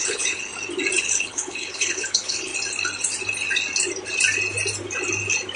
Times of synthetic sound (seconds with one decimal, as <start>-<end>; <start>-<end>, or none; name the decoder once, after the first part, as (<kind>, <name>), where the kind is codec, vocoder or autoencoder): 0.0-0.5 (codec, HILCodec); 1.0-2.5